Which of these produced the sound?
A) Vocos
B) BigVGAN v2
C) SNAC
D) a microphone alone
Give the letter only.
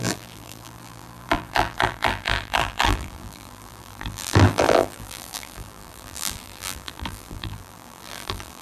B